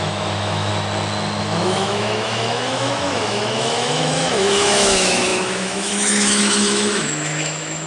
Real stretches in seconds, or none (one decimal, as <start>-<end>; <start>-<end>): 0.7-1.4